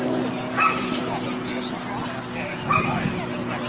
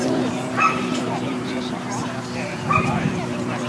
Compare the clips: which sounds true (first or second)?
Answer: first